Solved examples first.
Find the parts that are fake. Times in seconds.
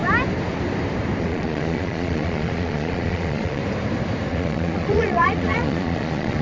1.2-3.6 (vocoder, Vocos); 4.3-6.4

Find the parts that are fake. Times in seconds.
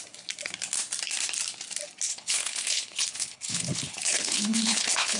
2.1-5.2 (codec, HILCodec)